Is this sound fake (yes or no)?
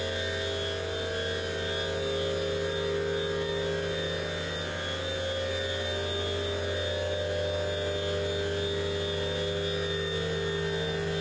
no